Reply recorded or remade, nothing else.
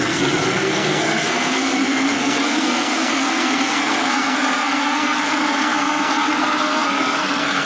remade